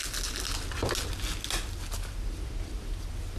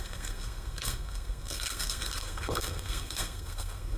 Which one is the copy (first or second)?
second